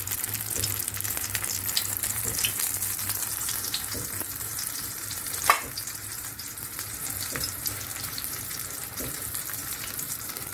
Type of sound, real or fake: fake